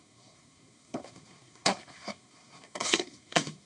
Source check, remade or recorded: remade